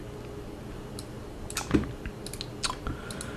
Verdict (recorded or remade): recorded